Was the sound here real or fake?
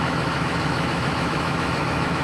fake